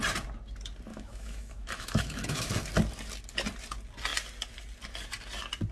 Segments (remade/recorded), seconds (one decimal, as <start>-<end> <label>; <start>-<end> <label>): 0.0-0.9 recorded; 0.9-2.5 remade; 2.5-5.7 recorded